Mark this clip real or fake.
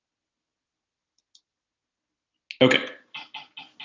real